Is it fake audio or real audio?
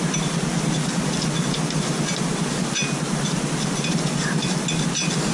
real